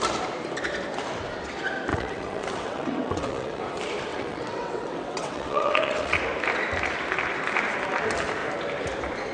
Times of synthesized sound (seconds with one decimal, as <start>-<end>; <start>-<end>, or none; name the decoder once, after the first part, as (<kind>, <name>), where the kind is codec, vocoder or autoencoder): 1.9-3.6 (vocoder, WaveNeXt); 4.1-6.2